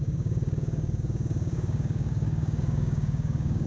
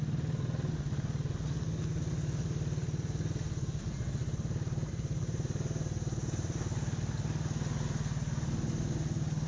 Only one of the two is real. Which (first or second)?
second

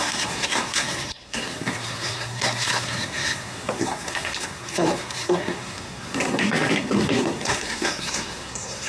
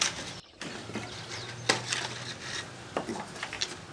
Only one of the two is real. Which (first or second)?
second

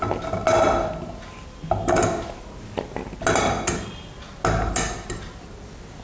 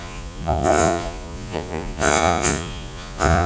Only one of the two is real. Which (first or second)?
first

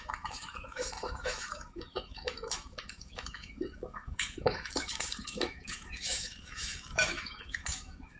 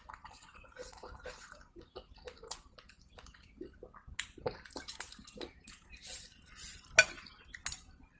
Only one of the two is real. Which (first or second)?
second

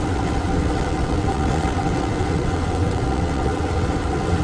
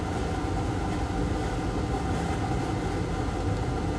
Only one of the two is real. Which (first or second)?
second